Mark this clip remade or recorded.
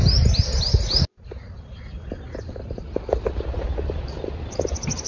recorded